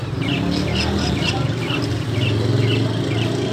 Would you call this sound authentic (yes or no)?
yes